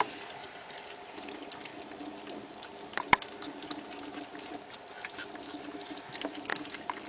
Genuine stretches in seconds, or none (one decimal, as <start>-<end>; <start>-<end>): 0.0-1.7; 4.2-7.1

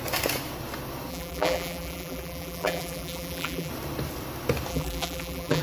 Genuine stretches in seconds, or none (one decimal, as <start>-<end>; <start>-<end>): 0.0-1.1; 3.7-4.7

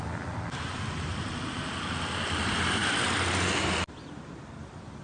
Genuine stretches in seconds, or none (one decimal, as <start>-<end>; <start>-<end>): none

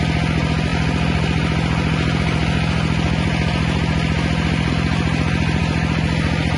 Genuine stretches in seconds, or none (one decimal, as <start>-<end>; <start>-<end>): 0.0-6.6

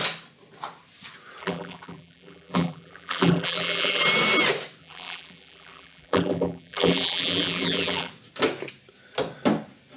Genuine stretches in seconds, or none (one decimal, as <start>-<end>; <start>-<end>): 0.0-1.4; 4.0-4.8; 8.1-10.0

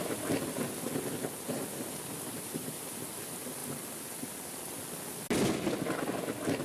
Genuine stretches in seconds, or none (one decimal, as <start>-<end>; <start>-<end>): 0.0-6.6

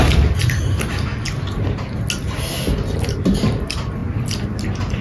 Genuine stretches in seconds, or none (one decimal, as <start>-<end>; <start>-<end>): 0.4-3.1

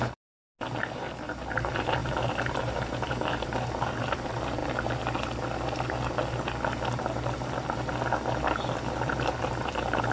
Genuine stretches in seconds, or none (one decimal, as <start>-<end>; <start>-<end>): 0.4-0.9; 4.6-9.4